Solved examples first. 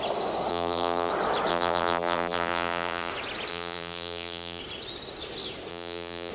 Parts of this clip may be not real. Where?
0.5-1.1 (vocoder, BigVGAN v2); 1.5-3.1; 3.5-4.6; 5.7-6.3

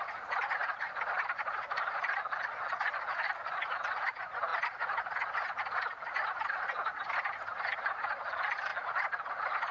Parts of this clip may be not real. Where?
none

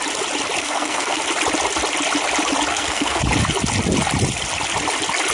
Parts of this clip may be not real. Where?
0.6-1.2 (codec, SNAC); 2.7-3.2

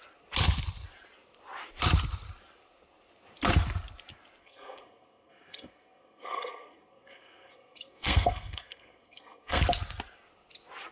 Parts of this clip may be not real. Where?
4.4-9.6 (codec, SNAC)

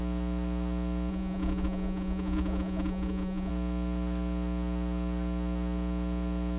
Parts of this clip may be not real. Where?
1.1-3.5 (vocoder, Vocos)